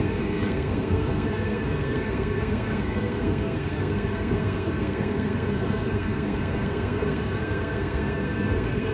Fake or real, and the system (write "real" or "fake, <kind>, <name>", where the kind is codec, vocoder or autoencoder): fake, codec, SNAC